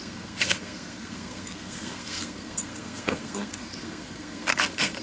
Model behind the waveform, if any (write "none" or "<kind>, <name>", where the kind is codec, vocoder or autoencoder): codec, SNAC